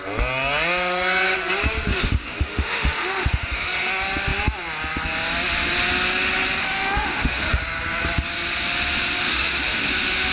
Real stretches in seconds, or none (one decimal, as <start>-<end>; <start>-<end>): 0.0-1.9; 3.9-6.6; 7.6-9.3; 9.9-10.3

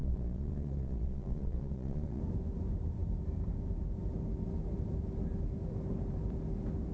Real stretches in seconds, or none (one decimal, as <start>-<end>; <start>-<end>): 2.2-6.9

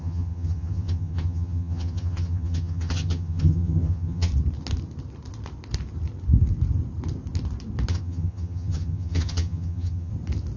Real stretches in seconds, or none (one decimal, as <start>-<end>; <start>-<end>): 4.3-7.9; 10.1-10.6

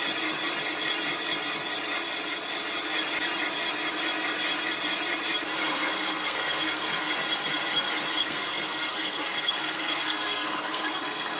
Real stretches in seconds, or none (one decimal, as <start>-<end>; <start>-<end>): 0.0-5.6; 7.1-8.2

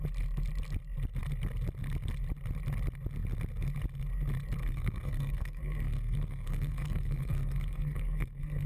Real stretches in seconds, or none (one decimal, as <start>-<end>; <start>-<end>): 0.0-4.6

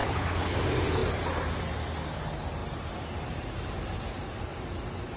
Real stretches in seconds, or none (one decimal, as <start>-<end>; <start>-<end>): 0.6-5.2

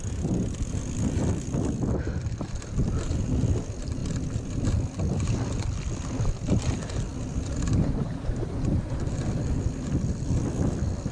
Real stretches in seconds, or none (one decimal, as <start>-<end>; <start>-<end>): 4.0-6.2; 7.1-7.7

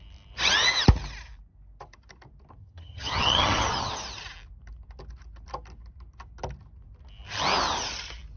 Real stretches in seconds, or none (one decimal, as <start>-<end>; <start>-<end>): 0.0-2.6; 3.9-8.4